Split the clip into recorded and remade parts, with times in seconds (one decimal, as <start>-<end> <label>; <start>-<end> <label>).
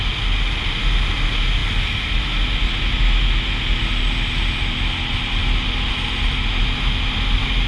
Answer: 0.0-7.7 recorded